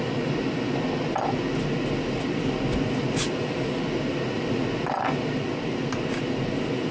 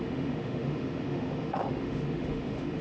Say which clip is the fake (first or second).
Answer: second